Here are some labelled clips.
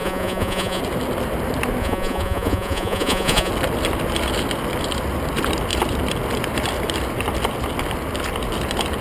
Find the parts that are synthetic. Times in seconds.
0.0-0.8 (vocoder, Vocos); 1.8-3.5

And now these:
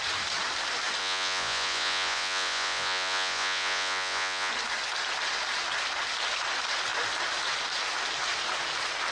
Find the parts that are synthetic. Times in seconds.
1.0-4.5 (vocoder, Vocos)

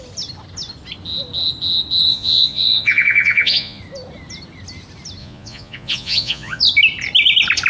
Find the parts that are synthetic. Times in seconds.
2.1-3.8 (vocoder, Vocos); 5.2-6.6

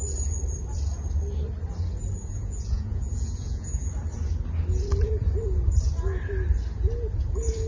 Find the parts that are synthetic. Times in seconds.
2.2-3.9 (vocoder, Vocos)

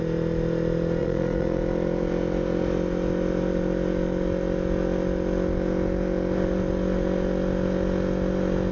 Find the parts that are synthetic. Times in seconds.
1.0-1.6 (vocoder, Vocos)

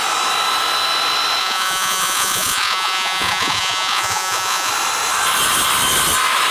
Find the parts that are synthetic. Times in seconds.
1.4-4.7 (vocoder, Vocos)

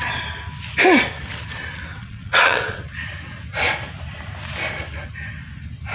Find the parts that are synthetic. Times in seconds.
2.0-2.8 (vocoder, Vocos)

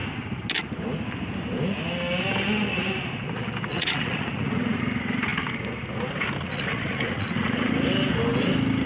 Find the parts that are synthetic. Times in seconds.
3.7-4.8 (vocoder, Vocos); 6.5-7.7